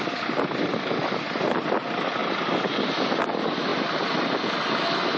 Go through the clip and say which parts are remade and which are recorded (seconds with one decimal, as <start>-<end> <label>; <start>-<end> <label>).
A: 0.0-5.2 recorded